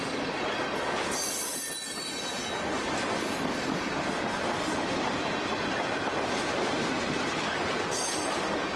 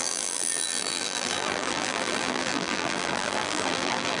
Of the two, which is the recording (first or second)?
first